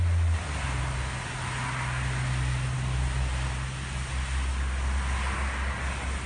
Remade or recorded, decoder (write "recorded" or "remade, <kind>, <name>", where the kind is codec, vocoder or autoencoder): recorded